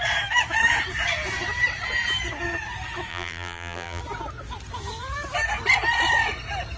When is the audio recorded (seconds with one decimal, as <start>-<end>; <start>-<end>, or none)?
0.0-3.1; 4.0-6.8